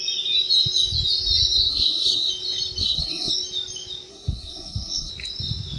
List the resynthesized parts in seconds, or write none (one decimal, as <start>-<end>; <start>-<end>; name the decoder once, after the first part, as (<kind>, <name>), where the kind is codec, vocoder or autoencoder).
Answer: 1.7-2.3 (codec, SNAC); 2.8-3.3; 4.1-5.1

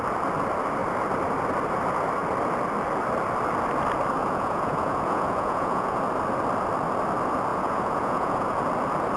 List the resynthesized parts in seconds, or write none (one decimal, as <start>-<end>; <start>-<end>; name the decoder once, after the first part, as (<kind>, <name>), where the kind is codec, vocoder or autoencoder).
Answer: 4.2-6.0 (vocoder, Vocos); 7.5-8.6

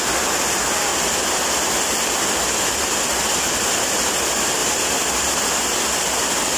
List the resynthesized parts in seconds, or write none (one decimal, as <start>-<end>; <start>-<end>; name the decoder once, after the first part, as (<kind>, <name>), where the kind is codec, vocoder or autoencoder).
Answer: 0.9-3.0 (vocoder, BigVGAN v2); 4.6-5.5

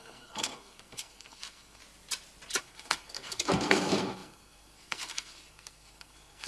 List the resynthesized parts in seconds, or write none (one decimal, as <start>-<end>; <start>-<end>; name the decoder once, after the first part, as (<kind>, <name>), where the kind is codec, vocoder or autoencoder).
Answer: 0.0-1.8 (codec, SNAC); 2.6-6.5

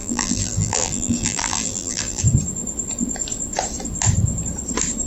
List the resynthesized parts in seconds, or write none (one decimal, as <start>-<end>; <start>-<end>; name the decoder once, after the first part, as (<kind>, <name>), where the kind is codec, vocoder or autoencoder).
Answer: 0.0-2.2 (vocoder, BigVGAN v2)

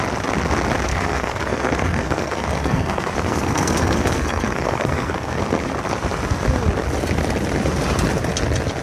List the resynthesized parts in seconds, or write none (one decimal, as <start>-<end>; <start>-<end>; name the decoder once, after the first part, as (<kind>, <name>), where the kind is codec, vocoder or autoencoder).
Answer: 0.9-5.4 (codec, SNAC)

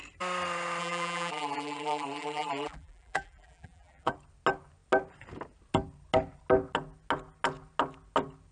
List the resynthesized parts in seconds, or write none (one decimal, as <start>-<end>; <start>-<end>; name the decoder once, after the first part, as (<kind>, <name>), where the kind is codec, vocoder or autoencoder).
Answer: 0.8-4.1 (vocoder, BigVGAN v2)

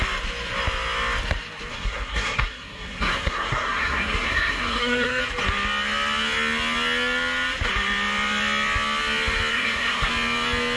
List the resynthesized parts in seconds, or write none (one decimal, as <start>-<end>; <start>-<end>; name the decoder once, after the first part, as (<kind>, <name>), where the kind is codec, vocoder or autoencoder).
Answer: 1.7-5.2 (codec, SNAC); 9.5-10.1